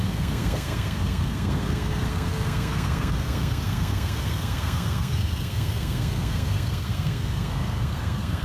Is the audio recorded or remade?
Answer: remade